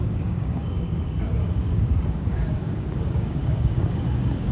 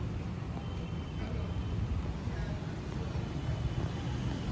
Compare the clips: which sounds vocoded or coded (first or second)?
first